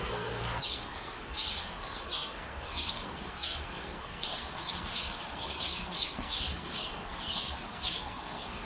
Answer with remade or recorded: remade